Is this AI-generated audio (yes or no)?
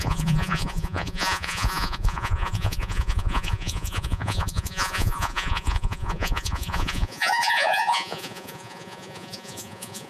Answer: yes